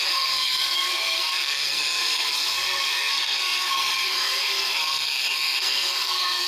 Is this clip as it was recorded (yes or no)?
no